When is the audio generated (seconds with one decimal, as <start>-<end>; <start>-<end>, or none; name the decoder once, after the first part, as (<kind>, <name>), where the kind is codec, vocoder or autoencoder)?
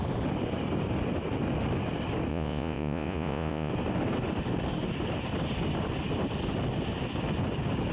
2.3-3.7 (vocoder, Vocos)